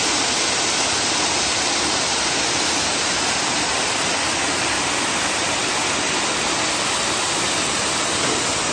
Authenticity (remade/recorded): recorded